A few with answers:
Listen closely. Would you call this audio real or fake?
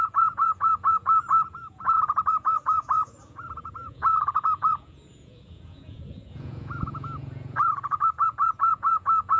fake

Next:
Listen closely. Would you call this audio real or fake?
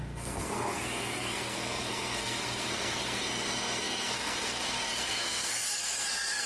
fake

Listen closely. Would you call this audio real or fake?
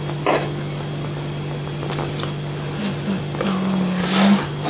real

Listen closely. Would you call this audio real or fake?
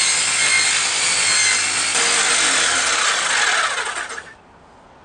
real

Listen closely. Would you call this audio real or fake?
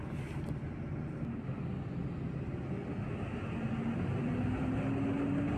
real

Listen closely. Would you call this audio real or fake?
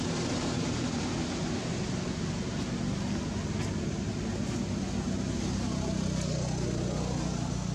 real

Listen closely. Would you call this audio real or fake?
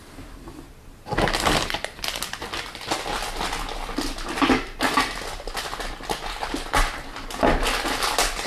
real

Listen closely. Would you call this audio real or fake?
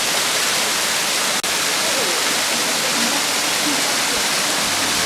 real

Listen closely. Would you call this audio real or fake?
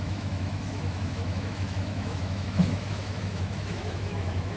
fake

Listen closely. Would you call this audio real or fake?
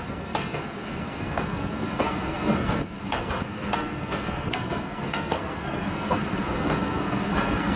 fake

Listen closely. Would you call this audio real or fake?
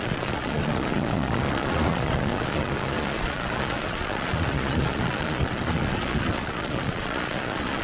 fake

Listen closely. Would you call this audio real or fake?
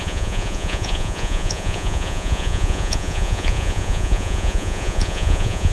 fake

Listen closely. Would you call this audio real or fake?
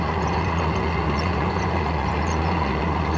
fake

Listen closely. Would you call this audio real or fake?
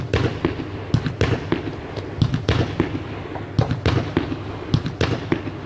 real